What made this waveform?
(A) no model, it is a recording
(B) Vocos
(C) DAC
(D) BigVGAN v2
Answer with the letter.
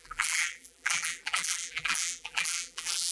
D